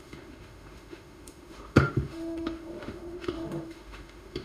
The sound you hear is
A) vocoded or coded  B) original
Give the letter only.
A